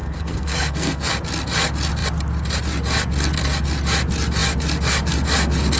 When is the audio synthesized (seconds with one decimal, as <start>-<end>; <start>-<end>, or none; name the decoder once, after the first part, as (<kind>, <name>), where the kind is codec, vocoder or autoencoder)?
0.0-1.1 (codec, SNAC)